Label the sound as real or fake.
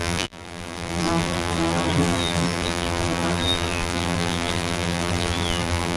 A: fake